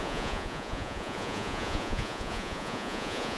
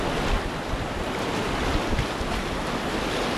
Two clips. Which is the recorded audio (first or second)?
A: second